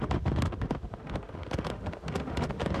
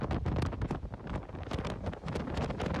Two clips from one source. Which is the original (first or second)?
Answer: second